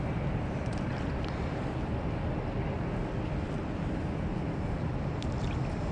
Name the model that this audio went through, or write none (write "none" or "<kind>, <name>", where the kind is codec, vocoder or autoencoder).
none